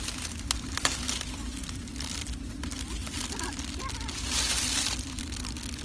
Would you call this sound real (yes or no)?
yes